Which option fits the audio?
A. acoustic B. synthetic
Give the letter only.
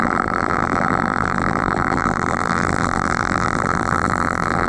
B